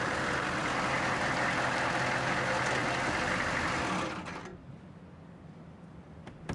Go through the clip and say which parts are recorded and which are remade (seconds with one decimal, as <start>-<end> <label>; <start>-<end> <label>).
0.0-6.5 recorded